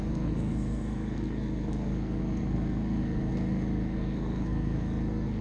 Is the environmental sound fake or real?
fake